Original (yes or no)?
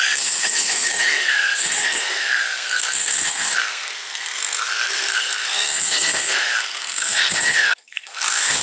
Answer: no